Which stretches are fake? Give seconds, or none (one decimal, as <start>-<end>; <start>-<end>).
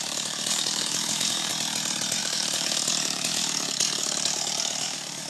0.0-1.5; 2.2-5.3